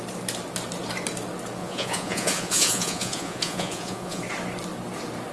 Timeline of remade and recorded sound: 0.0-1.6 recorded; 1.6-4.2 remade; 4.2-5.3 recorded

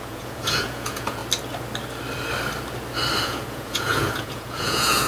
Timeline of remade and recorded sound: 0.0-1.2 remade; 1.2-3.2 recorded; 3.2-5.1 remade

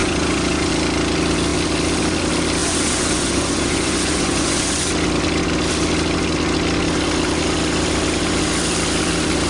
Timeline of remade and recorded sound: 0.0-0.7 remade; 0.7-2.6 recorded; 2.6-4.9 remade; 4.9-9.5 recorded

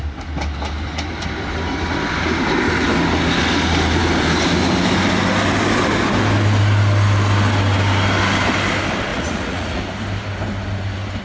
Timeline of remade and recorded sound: 0.0-9.1 recorded; 9.1-9.8 remade; 9.8-11.2 recorded

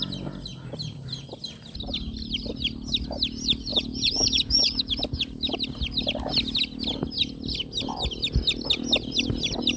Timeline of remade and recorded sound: 0.0-3.7 recorded; 3.7-4.9 remade; 4.9-9.8 recorded